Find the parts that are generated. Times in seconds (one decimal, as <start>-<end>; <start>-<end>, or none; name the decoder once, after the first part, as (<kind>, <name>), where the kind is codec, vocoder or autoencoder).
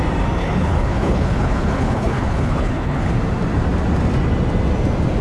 0.4-3.1 (codec, HILCodec)